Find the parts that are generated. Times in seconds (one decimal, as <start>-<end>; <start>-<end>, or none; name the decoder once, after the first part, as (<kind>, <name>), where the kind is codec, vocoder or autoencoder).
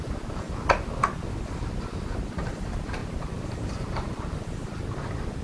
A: 3.0-4.3 (vocoder, BigVGAN v2)